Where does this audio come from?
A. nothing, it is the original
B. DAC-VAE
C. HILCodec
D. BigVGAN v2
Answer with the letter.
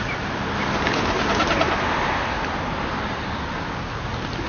A